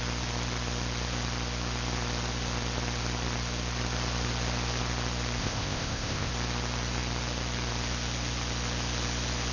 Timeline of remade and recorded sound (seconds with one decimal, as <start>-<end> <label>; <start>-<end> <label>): 0.0-5.4 recorded; 5.4-6.3 remade; 6.3-9.5 recorded